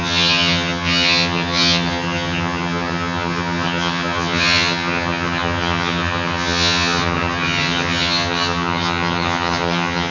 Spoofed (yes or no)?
yes